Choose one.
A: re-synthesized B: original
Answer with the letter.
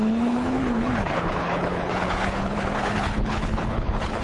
A